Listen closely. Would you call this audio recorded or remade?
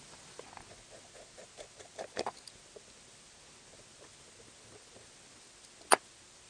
recorded